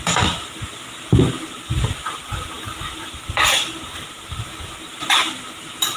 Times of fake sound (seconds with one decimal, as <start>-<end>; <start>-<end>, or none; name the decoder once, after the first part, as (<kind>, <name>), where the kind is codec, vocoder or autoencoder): 1.5-4.1 (vocoder, BigVGAN v2)

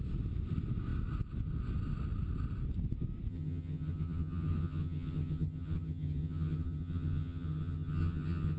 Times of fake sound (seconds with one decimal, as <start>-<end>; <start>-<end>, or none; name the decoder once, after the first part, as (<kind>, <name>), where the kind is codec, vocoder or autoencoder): 3.3-8.6 (vocoder, HiFi-GAN)

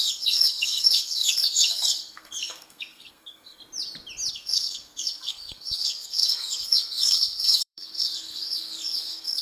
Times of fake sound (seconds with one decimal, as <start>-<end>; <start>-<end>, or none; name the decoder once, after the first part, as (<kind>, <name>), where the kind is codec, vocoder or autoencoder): 0.0-3.6 (codec, SNAC); 4.3-9.4

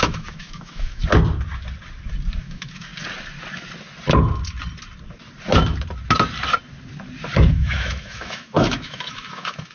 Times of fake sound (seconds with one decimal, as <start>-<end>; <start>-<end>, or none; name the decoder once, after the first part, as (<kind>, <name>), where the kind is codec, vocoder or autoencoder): 0.0-1.0 (autoencoder, DAC-VAE); 2.4-2.9; 7.5-9.7

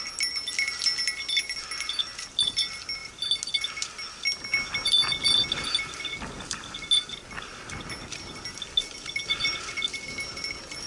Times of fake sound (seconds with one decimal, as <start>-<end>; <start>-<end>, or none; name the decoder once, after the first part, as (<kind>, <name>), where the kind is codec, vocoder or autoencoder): none

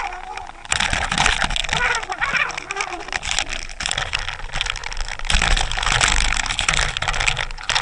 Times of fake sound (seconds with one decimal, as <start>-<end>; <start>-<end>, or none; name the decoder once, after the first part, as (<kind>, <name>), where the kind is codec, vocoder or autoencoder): none